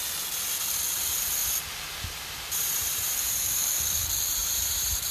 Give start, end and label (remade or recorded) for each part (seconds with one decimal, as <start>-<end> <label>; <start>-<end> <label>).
0.0-1.4 recorded; 1.4-3.6 remade; 3.6-4.4 recorded; 4.4-5.1 remade